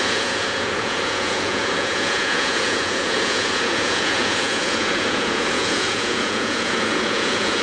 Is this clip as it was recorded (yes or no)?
no